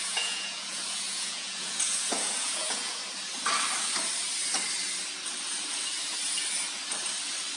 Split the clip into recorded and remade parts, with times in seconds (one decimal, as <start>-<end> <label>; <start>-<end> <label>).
0.0-3.0 remade; 3.0-7.6 recorded